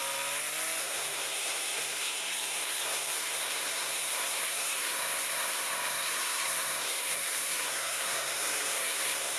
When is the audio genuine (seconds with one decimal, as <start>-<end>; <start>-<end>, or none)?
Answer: 0.0-0.8